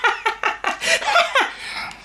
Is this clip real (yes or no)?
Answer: yes